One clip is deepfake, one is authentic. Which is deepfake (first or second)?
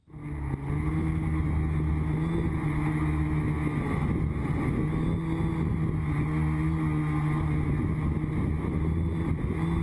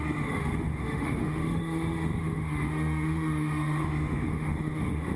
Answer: second